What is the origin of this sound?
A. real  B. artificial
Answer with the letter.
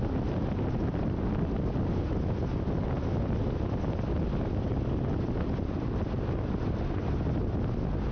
A